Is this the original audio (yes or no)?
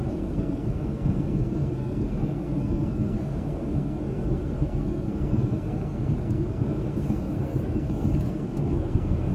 no